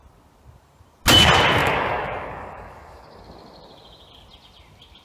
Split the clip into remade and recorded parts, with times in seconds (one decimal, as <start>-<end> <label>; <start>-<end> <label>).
0.0-1.6 recorded; 1.6-3.2 remade; 3.2-5.0 recorded